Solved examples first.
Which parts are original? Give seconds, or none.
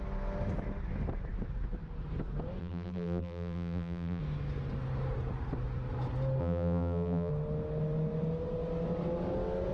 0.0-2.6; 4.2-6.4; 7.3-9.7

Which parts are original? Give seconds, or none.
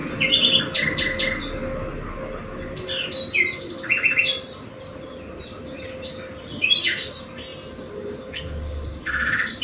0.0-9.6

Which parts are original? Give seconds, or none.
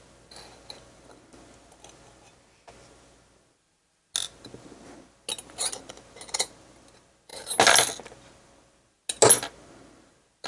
0.0-10.5